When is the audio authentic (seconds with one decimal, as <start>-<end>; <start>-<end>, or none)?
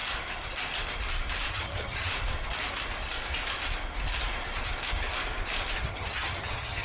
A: 0.0-1.5; 2.1-5.8